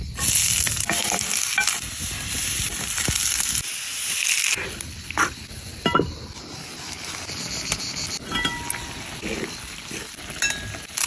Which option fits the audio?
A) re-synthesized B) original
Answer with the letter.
B